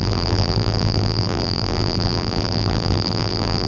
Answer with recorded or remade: remade